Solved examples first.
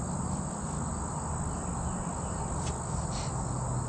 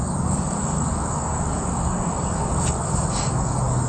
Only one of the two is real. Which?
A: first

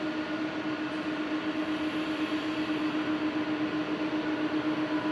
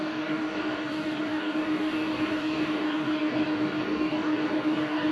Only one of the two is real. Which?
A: first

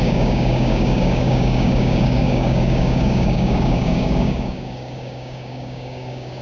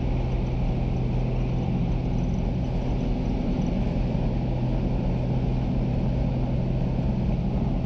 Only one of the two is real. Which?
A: second